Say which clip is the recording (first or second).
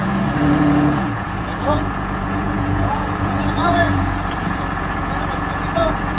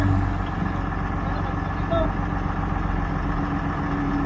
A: second